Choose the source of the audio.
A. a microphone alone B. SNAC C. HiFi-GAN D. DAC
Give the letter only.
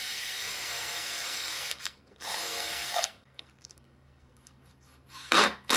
B